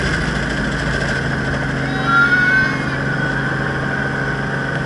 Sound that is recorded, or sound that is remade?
recorded